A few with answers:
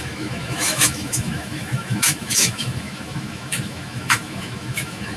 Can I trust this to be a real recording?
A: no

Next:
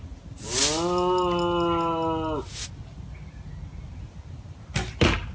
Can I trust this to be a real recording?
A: yes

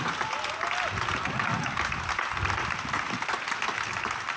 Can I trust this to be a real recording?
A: yes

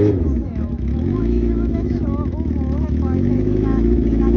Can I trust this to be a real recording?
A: no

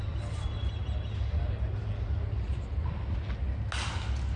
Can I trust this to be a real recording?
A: yes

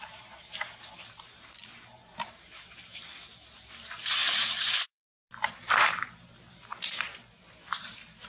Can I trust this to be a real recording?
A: no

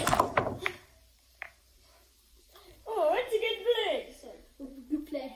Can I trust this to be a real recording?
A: no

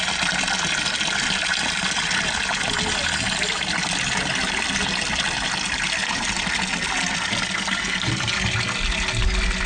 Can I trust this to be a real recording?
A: yes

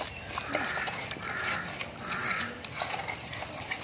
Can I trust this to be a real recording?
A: yes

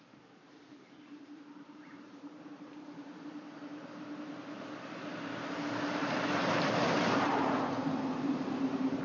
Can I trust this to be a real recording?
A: no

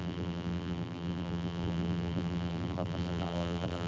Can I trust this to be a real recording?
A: no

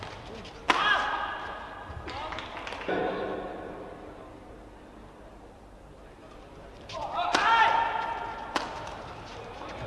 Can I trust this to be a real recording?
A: yes